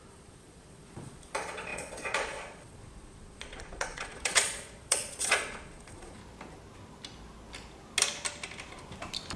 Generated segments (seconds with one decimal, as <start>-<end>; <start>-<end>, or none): 0.0-6.2